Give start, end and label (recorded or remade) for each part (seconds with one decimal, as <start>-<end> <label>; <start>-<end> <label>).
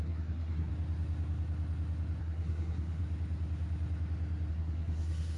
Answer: 0.0-0.7 remade; 0.7-2.2 recorded; 2.2-3.0 remade; 3.0-4.5 recorded; 4.5-5.4 remade